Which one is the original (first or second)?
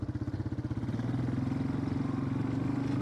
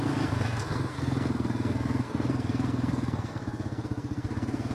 first